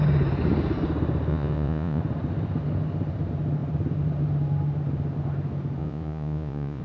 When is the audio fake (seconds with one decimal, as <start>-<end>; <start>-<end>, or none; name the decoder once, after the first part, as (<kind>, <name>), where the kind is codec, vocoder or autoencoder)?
1.3-2.0 (vocoder, Vocos); 5.8-6.8